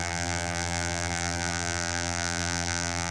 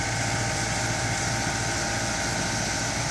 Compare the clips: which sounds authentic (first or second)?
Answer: second